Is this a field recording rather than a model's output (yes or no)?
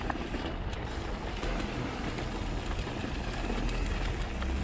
yes